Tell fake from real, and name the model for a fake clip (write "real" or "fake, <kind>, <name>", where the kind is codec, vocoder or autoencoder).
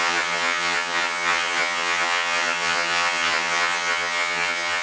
fake, vocoder, HiFi-GAN